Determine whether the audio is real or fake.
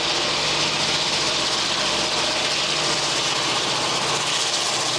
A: real